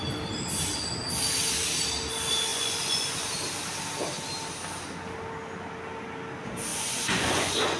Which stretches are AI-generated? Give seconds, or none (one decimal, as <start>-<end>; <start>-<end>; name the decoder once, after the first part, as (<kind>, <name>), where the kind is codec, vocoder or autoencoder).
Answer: 2.5-3.3 (vocoder, Vocos); 6.7-7.8